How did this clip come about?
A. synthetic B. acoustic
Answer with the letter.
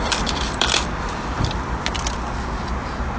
A